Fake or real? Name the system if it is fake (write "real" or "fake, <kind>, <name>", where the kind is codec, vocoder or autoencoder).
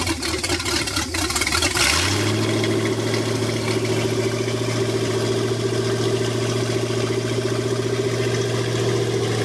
real